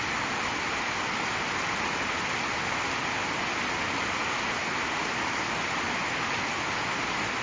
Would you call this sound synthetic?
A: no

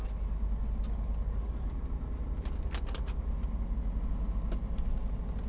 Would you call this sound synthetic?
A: no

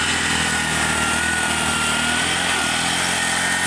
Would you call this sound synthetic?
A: no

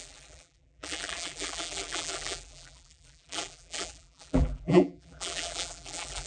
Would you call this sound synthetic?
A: yes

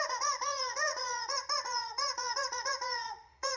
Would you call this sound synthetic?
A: yes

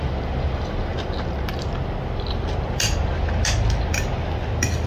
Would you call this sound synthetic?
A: no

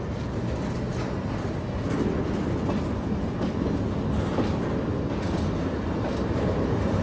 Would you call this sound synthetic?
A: no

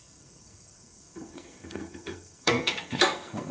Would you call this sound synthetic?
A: yes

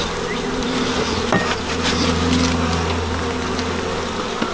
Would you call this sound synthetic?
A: no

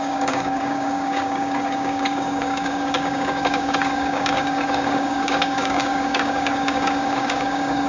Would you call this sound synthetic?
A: yes